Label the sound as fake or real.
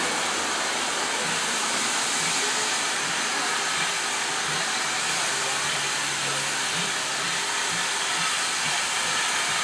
real